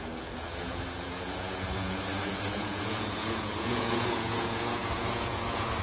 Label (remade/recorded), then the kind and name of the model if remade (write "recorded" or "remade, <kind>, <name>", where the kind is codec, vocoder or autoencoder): remade, vocoder, Vocos